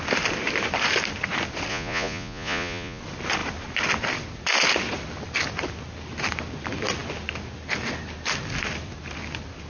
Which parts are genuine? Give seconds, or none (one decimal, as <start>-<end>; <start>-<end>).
0.0-1.7; 3.0-9.7